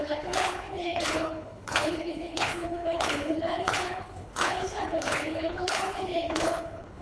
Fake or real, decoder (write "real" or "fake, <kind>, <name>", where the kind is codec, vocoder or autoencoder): fake, codec, HILCodec